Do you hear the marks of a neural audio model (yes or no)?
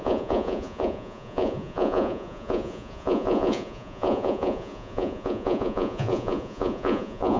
yes